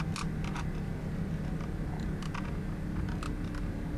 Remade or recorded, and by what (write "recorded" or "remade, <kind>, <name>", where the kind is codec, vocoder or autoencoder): recorded